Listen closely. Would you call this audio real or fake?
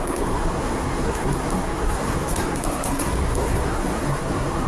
fake